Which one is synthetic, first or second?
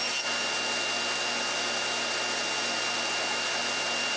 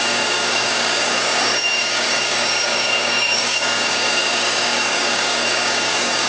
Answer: second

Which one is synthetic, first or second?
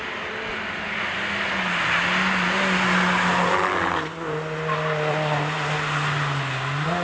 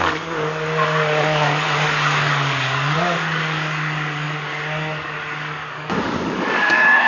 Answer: second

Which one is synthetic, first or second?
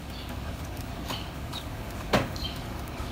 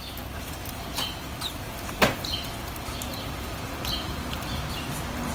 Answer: first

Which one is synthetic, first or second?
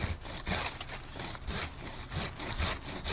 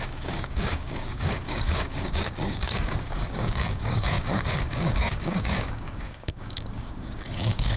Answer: second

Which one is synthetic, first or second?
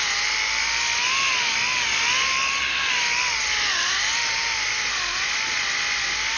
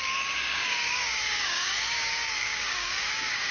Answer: second